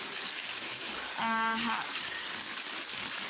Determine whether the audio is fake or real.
fake